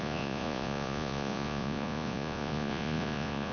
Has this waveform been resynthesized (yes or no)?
yes